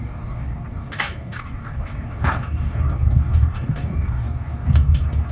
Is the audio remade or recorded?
remade